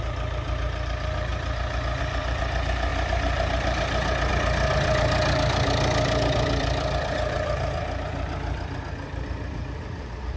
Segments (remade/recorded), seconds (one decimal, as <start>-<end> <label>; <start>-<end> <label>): 0.0-1.3 remade; 1.3-2.0 recorded; 2.0-2.9 remade; 2.9-4.3 recorded; 4.3-10.4 remade